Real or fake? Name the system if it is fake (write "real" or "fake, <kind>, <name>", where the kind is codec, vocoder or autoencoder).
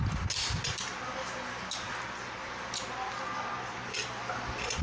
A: real